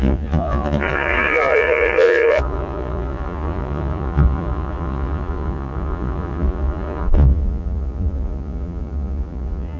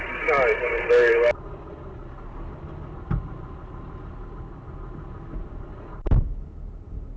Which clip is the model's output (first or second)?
first